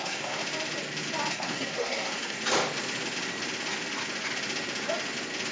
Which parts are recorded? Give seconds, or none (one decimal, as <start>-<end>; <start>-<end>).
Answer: 0.4-1.3; 2.4-5.5